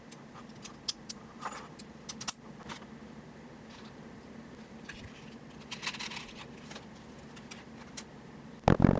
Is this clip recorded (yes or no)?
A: yes